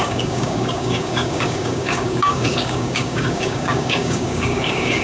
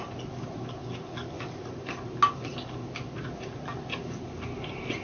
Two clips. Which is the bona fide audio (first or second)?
second